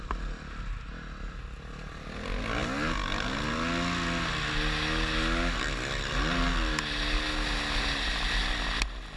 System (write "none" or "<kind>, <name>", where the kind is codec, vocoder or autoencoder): none